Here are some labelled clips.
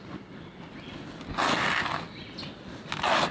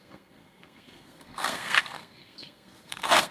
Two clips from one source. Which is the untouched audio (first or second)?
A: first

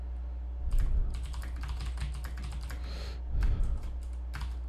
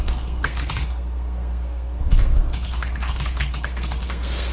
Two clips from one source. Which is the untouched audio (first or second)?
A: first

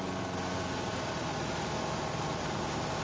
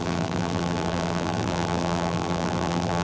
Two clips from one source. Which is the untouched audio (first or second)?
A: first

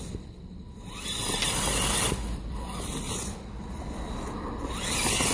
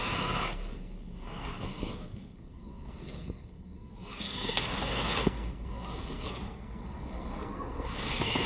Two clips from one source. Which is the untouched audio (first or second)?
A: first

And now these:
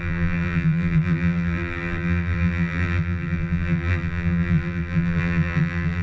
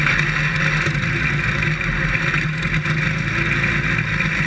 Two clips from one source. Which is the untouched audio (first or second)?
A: second